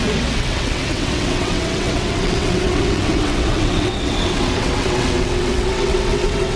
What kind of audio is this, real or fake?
fake